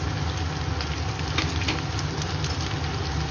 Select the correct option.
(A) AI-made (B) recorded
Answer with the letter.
B